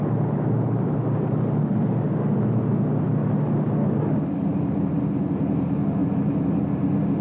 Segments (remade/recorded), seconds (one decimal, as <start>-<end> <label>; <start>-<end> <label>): 0.0-7.2 recorded